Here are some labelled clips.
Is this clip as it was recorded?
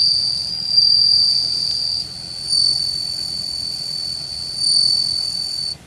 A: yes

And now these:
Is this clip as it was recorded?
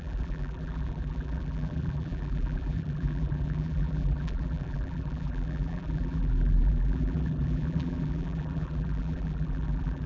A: no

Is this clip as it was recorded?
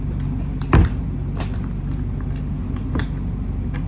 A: yes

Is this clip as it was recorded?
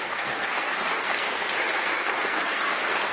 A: no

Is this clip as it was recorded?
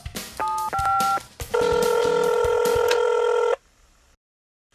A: yes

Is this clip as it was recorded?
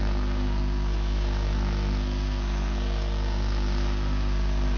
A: no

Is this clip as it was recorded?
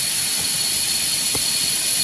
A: yes